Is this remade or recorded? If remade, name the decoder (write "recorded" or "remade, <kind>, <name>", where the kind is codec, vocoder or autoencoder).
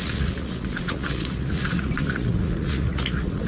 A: remade, vocoder, Vocos